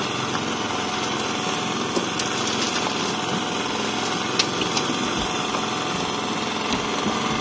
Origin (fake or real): real